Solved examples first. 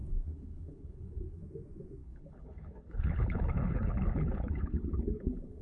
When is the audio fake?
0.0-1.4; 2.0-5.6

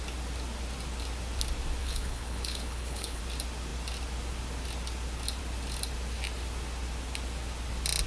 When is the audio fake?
1.8-3.2

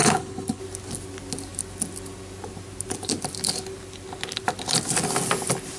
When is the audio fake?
0.0-0.6